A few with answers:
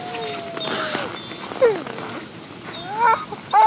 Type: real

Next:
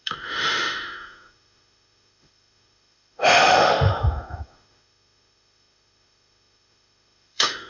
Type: fake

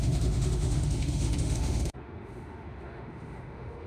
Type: fake